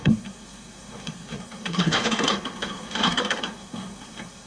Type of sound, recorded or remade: remade